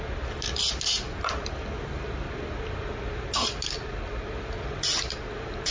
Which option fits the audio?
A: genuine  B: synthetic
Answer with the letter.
A